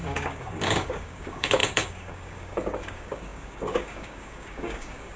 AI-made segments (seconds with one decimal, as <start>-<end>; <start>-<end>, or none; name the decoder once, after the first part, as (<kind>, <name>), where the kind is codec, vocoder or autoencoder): 0.0-5.2 (codec, DAC)